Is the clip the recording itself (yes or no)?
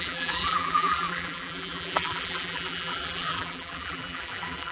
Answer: no